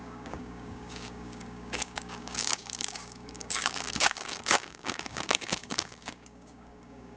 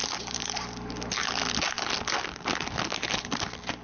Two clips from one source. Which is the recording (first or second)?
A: second